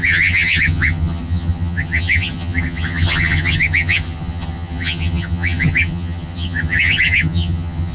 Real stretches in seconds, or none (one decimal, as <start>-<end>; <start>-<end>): none